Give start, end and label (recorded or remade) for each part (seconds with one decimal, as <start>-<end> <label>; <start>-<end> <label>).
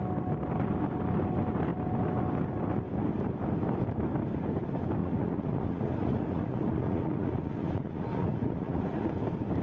0.0-5.0 recorded; 5.0-9.1 remade; 9.1-9.6 recorded